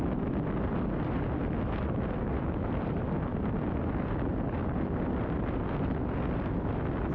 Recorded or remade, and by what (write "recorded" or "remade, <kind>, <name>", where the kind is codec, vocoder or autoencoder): recorded